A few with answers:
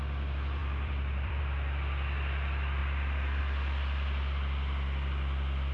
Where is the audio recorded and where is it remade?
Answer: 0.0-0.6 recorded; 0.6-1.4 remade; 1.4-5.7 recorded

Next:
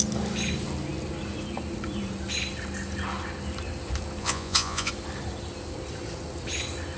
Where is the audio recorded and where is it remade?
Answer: 0.0-4.2 recorded; 4.2-4.9 remade; 4.9-7.0 recorded

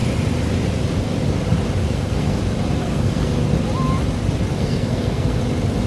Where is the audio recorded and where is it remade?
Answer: 0.0-1.8 recorded; 1.8-2.4 remade; 2.4-2.8 recorded; 2.8-3.4 remade; 3.4-4.5 recorded; 4.5-5.4 remade; 5.4-5.9 recorded

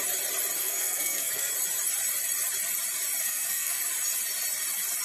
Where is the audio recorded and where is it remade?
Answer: 0.0-0.6 recorded; 0.6-1.5 remade; 1.5-3.2 recorded; 3.2-3.8 remade; 3.8-5.0 recorded

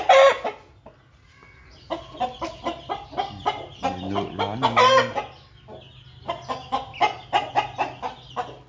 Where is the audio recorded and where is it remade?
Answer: 0.0-8.7 recorded